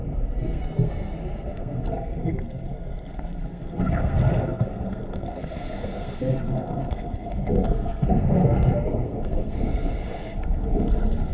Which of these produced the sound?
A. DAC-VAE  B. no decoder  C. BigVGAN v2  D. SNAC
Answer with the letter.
D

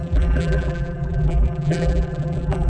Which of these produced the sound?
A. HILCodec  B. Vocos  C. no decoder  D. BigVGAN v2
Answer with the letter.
D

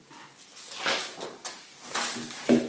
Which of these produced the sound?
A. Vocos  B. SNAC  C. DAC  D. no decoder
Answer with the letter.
D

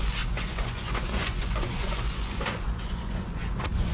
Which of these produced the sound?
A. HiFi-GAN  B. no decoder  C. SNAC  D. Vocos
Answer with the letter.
D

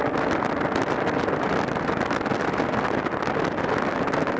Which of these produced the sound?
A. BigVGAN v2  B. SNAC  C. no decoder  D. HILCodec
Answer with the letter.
C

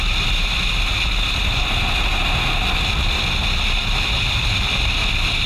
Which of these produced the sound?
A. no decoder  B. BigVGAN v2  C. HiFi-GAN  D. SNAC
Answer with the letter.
A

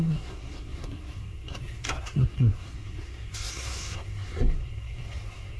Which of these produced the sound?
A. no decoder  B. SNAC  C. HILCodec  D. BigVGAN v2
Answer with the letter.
B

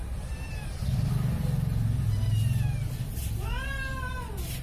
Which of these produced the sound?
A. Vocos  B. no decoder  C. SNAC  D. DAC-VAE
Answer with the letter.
B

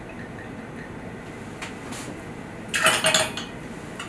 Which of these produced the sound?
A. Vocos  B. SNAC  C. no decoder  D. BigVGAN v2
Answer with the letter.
C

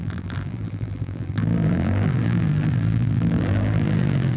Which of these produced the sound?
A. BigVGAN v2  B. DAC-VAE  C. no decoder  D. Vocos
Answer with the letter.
A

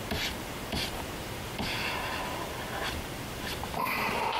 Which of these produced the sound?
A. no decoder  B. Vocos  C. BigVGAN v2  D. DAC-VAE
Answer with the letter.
A